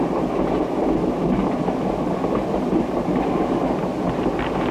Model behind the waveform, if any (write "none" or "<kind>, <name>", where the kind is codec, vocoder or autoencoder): none